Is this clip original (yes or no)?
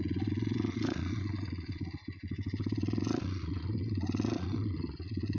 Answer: no